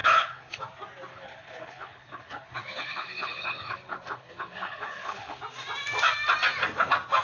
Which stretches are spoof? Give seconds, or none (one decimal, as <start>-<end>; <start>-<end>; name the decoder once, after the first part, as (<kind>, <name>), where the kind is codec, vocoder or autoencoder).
0.0-0.6 (codec, HILCodec); 1.1-5.4